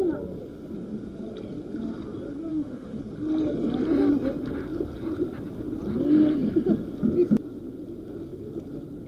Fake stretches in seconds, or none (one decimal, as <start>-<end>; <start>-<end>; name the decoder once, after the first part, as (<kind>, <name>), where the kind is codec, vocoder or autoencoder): 2.5-3.0 (autoencoder, DAC-VAE)